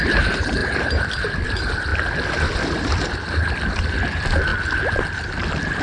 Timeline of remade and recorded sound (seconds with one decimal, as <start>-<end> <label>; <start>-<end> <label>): 0.0-0.6 recorded; 0.6-1.3 remade; 1.3-5.8 recorded